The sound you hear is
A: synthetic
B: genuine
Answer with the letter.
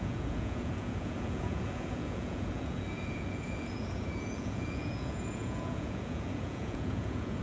A